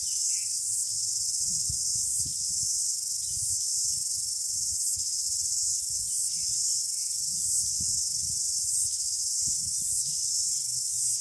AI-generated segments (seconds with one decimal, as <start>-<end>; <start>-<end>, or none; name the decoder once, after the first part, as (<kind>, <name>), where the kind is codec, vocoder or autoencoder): none